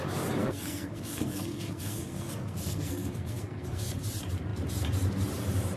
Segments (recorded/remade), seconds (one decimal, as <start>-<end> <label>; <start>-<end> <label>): 0.0-0.4 recorded; 0.4-3.9 remade; 3.9-5.8 recorded